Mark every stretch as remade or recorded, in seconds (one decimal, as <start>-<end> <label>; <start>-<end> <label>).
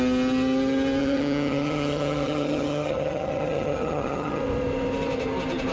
0.0-1.0 recorded; 1.0-4.4 remade; 4.4-5.7 recorded